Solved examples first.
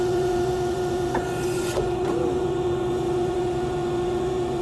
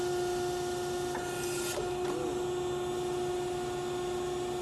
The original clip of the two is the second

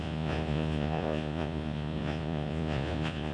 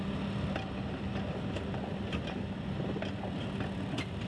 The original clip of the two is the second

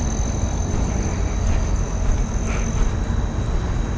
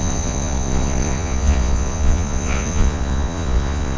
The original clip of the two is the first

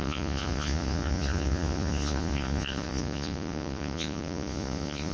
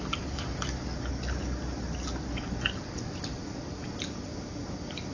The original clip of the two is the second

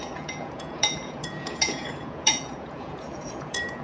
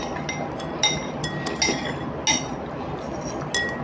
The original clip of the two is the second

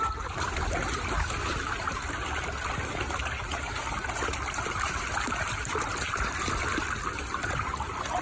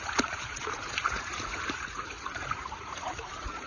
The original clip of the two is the first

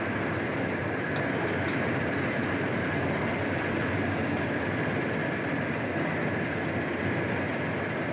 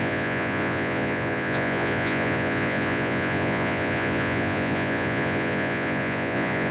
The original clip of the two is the first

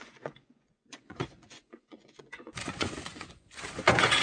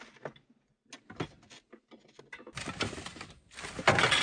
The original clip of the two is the second